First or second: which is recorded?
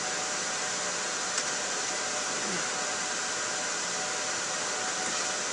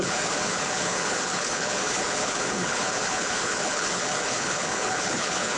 first